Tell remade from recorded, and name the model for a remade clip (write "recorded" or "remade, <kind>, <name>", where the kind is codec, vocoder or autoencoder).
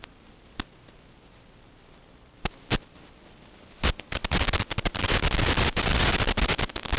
recorded